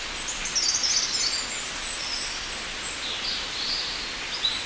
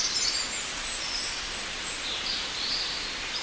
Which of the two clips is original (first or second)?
first